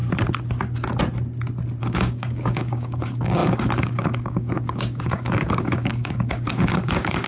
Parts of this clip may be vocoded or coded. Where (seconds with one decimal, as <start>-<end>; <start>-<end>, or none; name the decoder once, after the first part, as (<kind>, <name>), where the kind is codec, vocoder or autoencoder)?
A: 1.8-7.3 (codec, DAC)